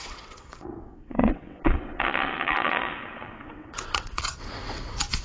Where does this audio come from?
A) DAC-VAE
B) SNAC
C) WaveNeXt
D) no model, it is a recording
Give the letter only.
C